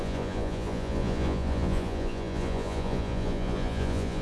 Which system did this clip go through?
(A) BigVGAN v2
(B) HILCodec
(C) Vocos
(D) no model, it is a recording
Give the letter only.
C